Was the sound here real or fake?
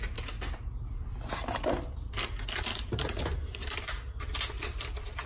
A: real